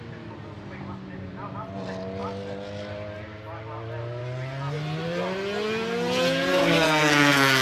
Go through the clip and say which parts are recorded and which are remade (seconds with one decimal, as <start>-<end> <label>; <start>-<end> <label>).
0.0-6.5 recorded; 6.5-7.6 remade